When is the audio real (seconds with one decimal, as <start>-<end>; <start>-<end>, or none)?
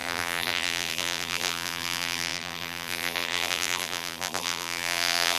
none